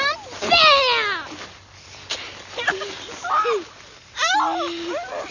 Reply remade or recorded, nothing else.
recorded